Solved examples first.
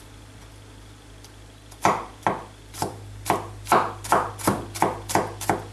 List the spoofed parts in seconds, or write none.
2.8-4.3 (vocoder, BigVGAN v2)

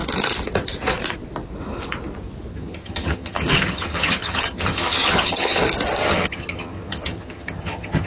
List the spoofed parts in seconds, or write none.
2.5-5.6 (vocoder, HiFi-GAN); 6.0-8.1

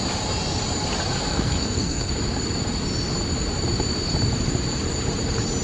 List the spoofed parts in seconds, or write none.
1.3-2.1 (codec, SNAC)

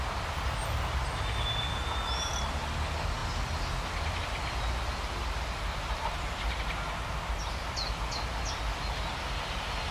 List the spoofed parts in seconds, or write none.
5.7-6.6 (vocoder, BigVGAN v2)

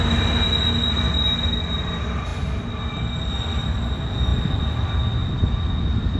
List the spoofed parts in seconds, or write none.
none

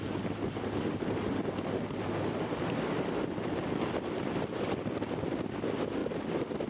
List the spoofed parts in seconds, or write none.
none

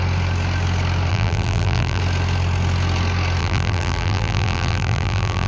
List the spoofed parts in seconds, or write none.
1.1-2.0 (vocoder, BigVGAN v2); 3.4-5.5

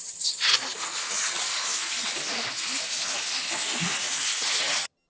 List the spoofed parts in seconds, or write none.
0.0-0.5 (vocoder, HiFi-GAN); 1.1-1.5; 4.6-5.1